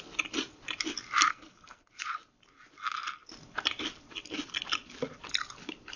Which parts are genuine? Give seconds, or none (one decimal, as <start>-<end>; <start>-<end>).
0.0-1.3; 1.9-6.0